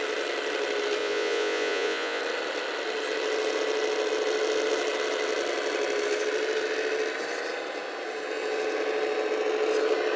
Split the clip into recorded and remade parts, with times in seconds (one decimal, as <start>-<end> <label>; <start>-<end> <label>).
0.0-1.0 recorded; 1.0-2.2 remade; 2.2-10.2 recorded